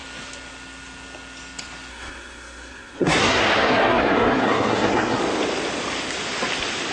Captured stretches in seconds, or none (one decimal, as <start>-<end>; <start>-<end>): 0.0-1.9; 5.2-6.9